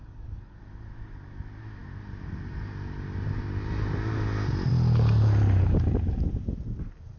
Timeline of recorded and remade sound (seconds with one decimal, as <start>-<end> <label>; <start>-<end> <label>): 0.0-0.6 remade; 0.6-7.2 recorded